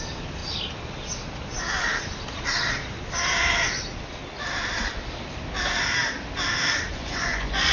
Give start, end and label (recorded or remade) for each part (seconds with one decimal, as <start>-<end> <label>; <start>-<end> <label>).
0.0-6.9 recorded; 6.9-7.7 remade